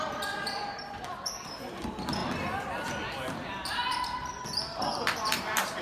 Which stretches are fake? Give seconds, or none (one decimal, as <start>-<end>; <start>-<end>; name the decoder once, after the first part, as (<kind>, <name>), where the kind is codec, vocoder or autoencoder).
0.0-2.2 (vocoder, BigVGAN v2); 3.1-5.8